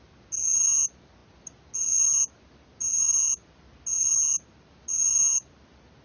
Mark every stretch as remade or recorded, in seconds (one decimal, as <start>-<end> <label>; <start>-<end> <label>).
0.0-6.0 recorded